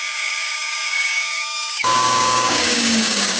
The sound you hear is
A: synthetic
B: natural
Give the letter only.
A